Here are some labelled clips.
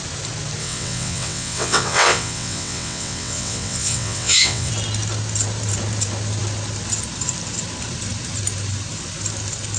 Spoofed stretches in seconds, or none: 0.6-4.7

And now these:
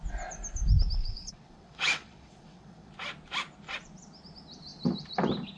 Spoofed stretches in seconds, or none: 1.0-2.9

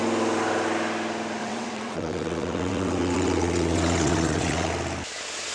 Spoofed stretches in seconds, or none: 1.4-4.7